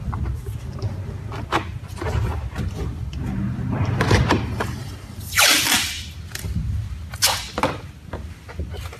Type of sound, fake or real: real